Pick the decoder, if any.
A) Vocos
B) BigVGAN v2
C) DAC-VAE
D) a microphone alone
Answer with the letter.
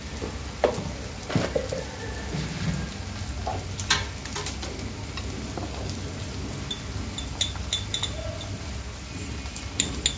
D